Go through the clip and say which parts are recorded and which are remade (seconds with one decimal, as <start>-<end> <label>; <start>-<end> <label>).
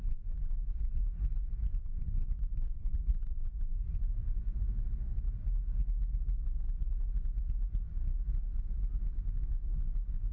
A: 0.0-1.0 remade; 1.0-1.8 recorded; 1.8-4.6 remade; 4.6-10.3 recorded